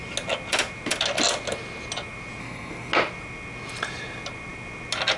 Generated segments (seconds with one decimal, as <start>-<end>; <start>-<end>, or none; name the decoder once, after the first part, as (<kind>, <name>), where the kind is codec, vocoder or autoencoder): 2.4-2.9 (codec, SNAC)

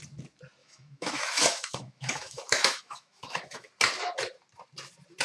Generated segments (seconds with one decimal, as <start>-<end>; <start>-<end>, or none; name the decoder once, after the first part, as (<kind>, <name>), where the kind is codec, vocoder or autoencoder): 0.6-3.7 (autoencoder, DAC-VAE)

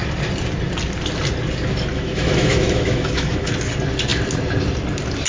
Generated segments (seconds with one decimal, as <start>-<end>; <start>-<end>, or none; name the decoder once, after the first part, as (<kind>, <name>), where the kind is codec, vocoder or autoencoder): 1.9-3.5 (autoencoder, DAC-VAE)

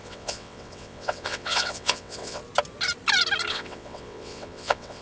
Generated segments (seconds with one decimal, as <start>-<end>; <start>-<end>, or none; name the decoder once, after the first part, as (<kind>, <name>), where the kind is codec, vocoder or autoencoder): 0.0-2.4 (vocoder, WaveNeXt); 3.5-5.0

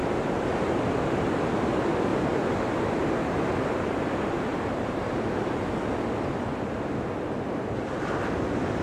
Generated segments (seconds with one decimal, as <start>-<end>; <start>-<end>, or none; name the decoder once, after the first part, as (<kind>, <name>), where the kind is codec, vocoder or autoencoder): 2.1-5.2 (vocoder, BigVGAN v2)